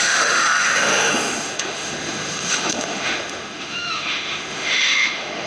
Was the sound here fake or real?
fake